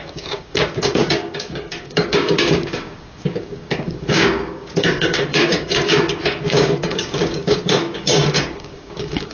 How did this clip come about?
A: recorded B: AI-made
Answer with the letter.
B